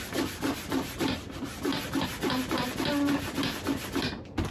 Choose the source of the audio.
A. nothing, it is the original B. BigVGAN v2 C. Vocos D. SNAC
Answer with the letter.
A